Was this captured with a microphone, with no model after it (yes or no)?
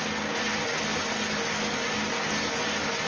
yes